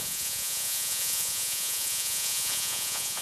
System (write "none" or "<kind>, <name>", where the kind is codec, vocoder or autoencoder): vocoder, Vocos